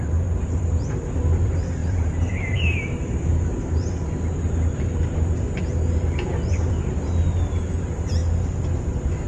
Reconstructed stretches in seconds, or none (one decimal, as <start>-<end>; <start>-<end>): 0.0-8.2; 8.9-9.3